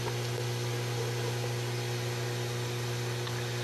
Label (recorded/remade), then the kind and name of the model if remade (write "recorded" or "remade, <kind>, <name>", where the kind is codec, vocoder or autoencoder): recorded